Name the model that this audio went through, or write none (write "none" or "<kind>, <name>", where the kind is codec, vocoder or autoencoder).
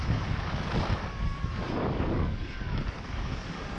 codec, DAC